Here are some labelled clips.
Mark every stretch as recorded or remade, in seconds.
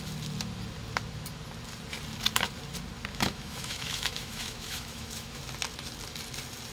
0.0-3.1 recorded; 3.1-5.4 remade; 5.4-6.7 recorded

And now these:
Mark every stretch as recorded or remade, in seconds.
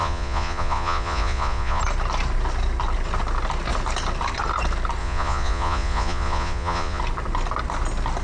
0.0-1.8 remade; 1.8-5.0 recorded; 5.0-7.0 remade; 7.0-8.2 recorded